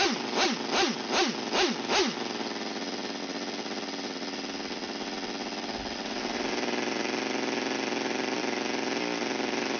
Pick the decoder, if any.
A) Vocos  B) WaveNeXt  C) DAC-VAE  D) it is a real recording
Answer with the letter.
D